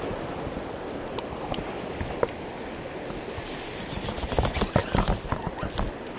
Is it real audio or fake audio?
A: real